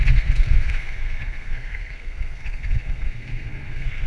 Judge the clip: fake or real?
fake